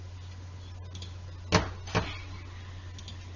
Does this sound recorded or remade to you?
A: recorded